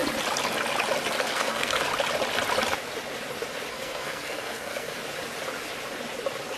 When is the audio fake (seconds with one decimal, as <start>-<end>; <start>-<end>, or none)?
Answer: 1.2-1.9; 3.7-5.0